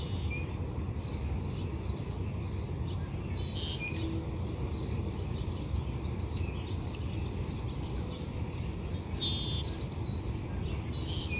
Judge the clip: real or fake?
real